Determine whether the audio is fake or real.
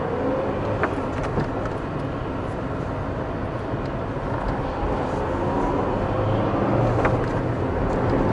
real